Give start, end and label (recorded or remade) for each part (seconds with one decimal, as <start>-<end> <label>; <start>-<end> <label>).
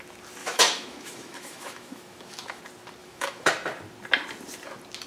0.0-0.4 recorded; 0.4-2.6 remade; 2.6-3.0 recorded; 3.0-3.5 remade; 3.5-5.1 recorded